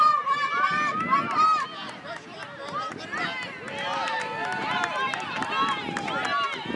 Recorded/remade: recorded